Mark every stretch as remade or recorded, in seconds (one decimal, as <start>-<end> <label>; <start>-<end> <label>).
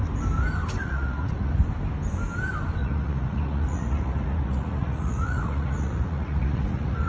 0.0-0.8 recorded; 0.8-1.5 remade; 1.5-2.8 recorded; 2.8-7.1 remade